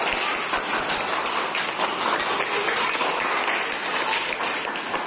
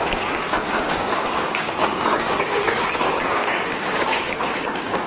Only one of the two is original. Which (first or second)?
first